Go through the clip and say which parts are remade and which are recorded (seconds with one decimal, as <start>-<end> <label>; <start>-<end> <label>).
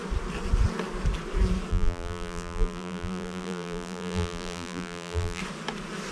0.0-1.7 recorded; 1.7-5.4 remade; 5.4-6.1 recorded